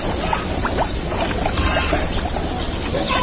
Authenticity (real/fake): real